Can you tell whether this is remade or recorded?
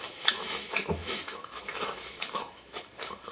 remade